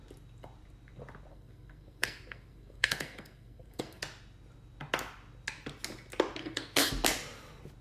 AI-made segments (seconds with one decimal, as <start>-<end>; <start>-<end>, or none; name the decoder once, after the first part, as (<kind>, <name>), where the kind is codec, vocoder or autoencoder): 1.3-4.0 (codec, SNAC); 6.4-6.9